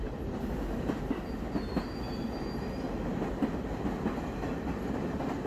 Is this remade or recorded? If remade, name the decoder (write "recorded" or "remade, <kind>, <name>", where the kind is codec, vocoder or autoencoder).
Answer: recorded